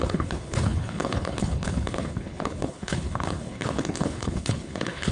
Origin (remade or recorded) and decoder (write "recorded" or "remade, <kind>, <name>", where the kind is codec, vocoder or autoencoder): remade, codec, HILCodec